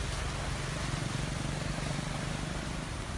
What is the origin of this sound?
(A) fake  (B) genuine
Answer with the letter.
A